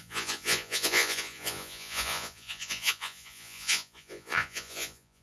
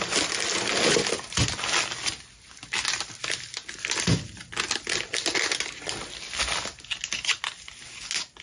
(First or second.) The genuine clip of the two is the second